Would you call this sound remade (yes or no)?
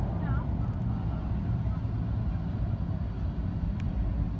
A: no